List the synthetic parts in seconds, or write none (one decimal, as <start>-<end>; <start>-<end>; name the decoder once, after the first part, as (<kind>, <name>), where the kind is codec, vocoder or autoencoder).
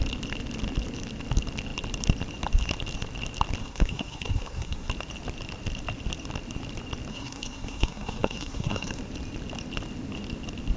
3.6-4.9 (codec, SNAC); 7.1-9.0